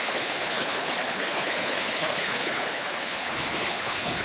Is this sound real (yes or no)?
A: no